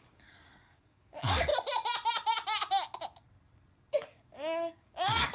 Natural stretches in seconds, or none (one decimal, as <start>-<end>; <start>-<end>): 1.5-3.9